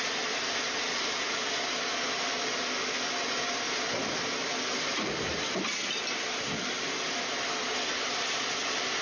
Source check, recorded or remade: recorded